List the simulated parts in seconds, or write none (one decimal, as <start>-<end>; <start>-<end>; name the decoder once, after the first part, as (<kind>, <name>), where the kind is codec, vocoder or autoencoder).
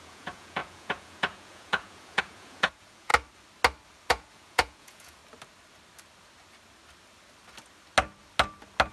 0.0-3.1 (vocoder, Vocos); 4.1-5.2